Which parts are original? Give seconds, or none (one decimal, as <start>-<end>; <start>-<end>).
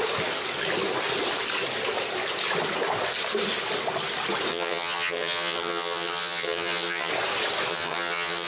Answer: 0.0-4.5; 7.1-7.7